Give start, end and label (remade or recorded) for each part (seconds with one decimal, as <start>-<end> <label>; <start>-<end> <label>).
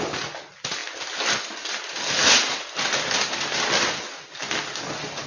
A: 0.0-5.3 recorded